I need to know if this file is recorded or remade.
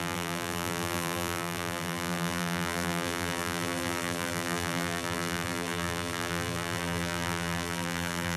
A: remade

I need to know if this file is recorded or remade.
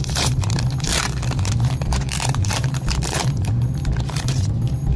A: remade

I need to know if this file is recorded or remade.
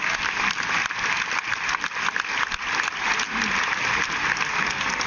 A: recorded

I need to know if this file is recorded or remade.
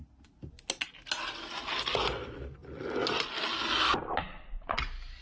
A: recorded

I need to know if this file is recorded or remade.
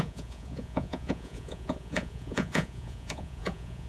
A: remade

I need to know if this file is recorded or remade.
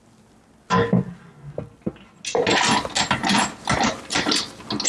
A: recorded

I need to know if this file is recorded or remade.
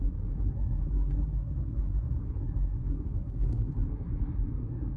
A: remade